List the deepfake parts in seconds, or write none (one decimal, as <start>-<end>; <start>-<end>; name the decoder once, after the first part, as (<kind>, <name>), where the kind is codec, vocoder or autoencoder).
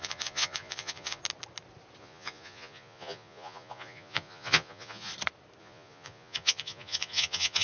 0.0-1.2 (vocoder, Vocos); 2.0-5.1; 5.6-7.6